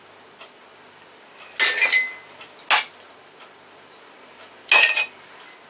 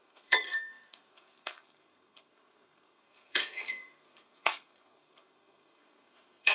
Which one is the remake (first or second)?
second